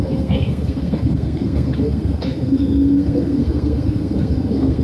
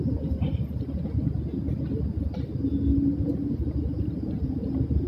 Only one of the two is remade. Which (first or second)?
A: first